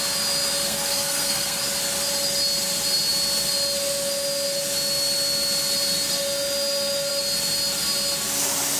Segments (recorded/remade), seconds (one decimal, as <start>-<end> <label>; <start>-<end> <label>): 0.0-0.6 recorded; 0.6-1.6 remade; 1.6-8.8 recorded